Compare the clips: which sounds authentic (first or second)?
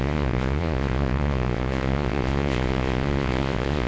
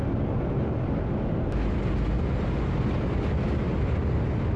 second